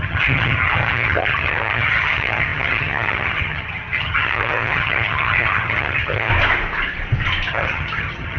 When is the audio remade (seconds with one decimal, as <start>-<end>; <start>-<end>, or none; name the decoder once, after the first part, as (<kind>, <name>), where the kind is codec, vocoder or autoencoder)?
0.0-6.3 (vocoder, HiFi-GAN); 7.5-8.4